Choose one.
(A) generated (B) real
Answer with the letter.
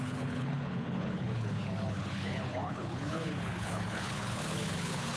A